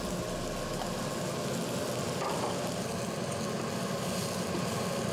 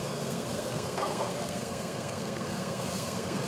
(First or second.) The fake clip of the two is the second